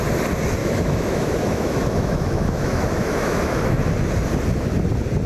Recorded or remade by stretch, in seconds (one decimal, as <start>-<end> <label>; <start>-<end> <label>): 0.0-0.6 recorded; 0.6-3.8 remade; 3.8-5.3 recorded